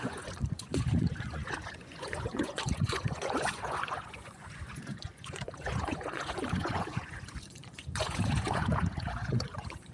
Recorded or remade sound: remade